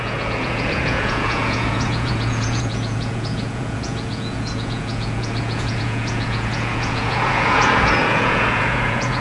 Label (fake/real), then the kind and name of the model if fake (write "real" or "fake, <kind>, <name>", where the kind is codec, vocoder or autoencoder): fake, vocoder, Vocos